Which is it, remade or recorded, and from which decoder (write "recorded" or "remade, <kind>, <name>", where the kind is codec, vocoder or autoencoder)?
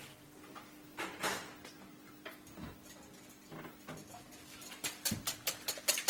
recorded